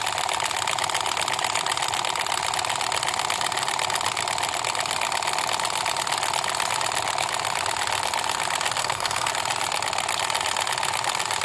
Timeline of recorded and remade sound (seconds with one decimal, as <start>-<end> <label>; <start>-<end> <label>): 0.0-8.8 recorded; 8.8-9.3 remade; 9.3-11.4 recorded